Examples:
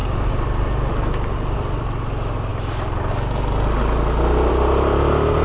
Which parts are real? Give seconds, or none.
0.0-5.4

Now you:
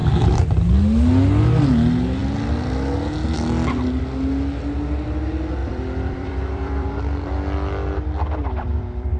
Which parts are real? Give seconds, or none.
0.7-5.6; 6.9-8.4

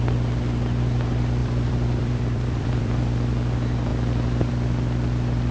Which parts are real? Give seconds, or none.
0.0-1.4; 3.1-5.5

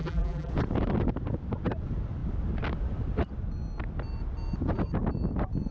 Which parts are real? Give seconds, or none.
0.5-5.7

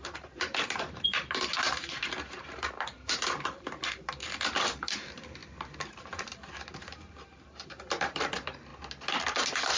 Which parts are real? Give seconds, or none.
8.7-9.8